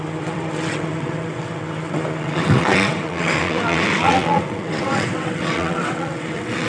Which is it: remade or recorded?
remade